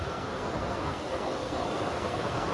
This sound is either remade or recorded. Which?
remade